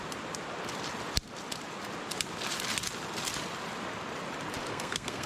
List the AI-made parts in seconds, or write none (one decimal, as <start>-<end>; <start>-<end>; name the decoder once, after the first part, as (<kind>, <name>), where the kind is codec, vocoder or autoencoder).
4.7-5.3 (codec, SNAC)